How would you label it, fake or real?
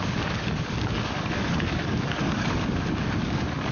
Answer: fake